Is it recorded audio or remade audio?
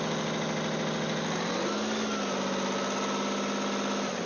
recorded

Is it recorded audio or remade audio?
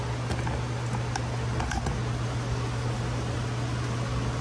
recorded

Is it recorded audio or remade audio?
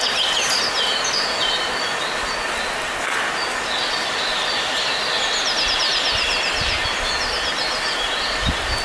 recorded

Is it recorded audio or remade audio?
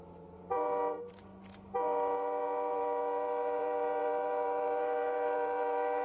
remade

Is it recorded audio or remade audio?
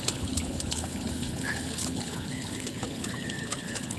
remade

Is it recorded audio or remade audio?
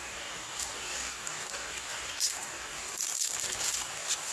remade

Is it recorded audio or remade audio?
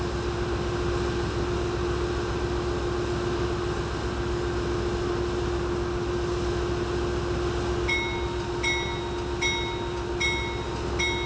recorded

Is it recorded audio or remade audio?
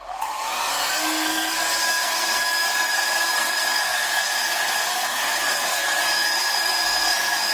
remade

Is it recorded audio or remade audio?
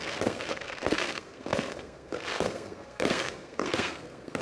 remade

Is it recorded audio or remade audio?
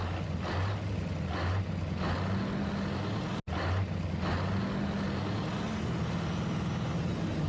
recorded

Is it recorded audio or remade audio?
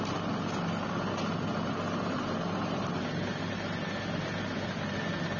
recorded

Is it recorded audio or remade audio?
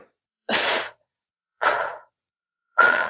remade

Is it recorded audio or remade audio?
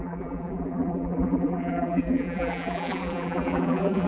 remade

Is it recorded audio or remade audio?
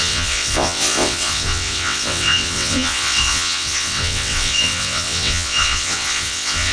remade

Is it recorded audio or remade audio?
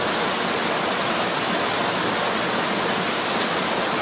recorded